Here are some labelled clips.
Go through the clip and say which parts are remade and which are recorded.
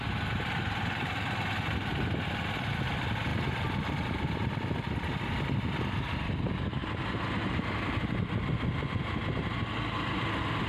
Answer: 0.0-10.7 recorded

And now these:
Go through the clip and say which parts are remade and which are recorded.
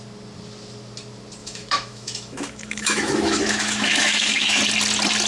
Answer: 0.0-1.4 recorded; 1.4-4.6 remade; 4.6-5.3 recorded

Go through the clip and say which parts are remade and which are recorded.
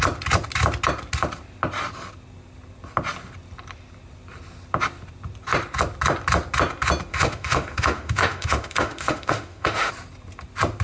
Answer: 0.0-7.1 recorded; 7.1-9.9 remade; 9.9-10.8 recorded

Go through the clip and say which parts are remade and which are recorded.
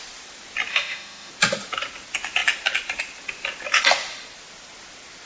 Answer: 0.0-0.7 recorded; 0.7-1.3 remade; 1.3-5.3 recorded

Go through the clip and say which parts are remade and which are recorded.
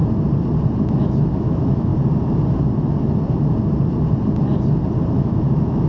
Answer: 0.0-1.0 recorded; 1.0-1.9 remade; 1.9-5.1 recorded; 5.1-5.9 remade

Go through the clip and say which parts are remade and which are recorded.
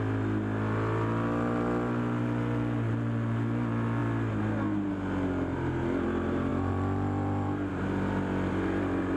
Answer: 0.0-9.2 recorded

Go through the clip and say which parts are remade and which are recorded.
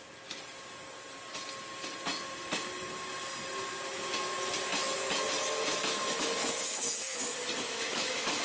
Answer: 0.0-4.7 recorded; 4.7-8.4 remade